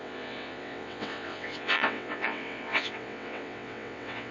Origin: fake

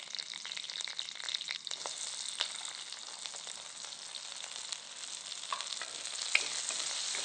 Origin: real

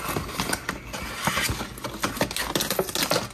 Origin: real